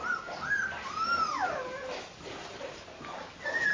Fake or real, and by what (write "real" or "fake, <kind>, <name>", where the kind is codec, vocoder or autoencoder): real